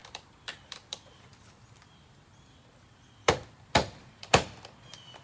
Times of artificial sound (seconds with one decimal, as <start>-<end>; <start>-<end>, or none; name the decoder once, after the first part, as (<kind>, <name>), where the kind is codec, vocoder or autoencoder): 0.0-5.2 (vocoder, BigVGAN v2)